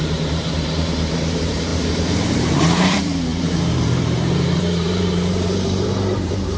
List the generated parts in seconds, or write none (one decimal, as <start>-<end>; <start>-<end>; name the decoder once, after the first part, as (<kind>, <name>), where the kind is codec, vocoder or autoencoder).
0.0-6.6 (vocoder, BigVGAN v2)